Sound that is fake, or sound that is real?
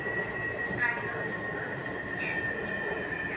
real